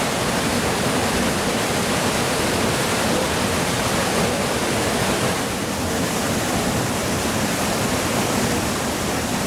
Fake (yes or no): yes